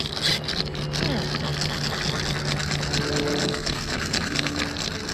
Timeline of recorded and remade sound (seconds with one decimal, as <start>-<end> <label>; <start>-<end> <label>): 0.0-3.4 recorded; 3.4-4.6 remade; 4.6-5.1 recorded